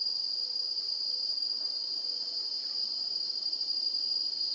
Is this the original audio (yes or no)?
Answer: yes